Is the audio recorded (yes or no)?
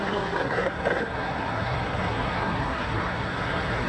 no